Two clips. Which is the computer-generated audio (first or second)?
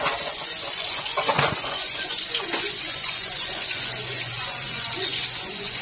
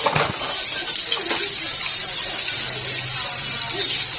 first